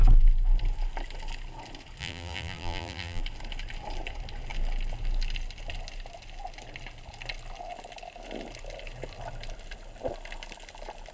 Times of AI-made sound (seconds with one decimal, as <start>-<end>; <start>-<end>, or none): 2.0-3.2